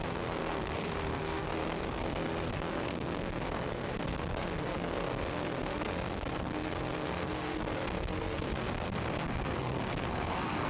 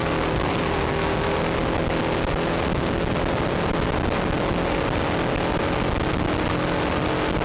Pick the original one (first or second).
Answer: second